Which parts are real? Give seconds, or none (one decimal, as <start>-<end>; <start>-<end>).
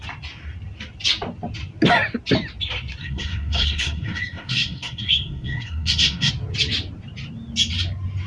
0.0-3.0; 6.3-8.3